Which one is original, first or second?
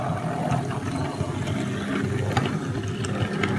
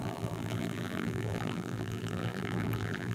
first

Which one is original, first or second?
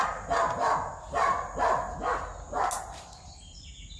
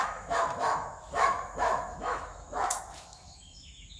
first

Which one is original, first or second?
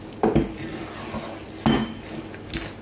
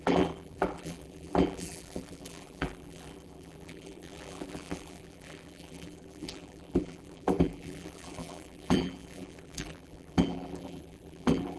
first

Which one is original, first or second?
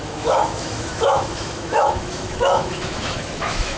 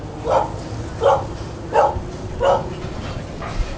second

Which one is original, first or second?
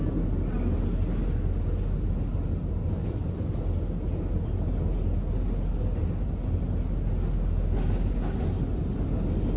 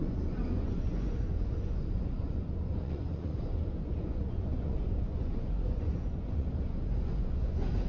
first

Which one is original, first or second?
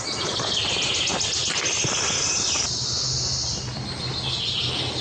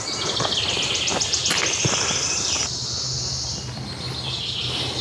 first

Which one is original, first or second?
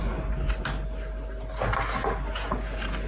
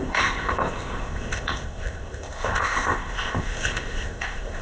first